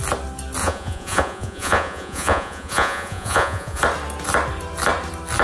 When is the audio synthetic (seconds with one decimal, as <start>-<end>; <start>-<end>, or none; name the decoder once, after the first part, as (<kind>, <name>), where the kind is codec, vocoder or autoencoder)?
0.6-3.8 (vocoder, Vocos)